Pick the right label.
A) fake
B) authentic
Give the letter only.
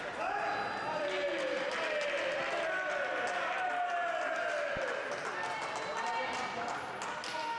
B